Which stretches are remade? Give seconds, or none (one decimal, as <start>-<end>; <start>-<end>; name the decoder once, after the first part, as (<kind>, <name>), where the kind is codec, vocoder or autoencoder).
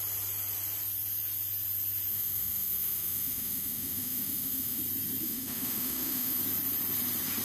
2.1-4.8 (autoencoder, DAC-VAE); 5.2-6.4